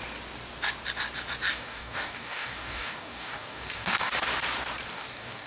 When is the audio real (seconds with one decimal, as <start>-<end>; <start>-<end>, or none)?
0.0-1.5; 4.1-4.9